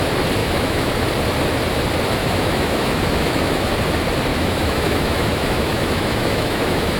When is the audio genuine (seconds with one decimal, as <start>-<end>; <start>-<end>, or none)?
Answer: 0.0-0.4; 0.9-2.2; 3.7-4.3